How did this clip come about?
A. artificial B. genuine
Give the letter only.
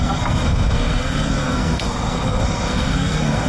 A